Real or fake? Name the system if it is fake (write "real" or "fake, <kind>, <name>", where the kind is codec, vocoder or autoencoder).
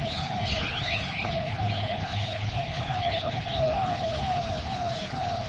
fake, codec, HILCodec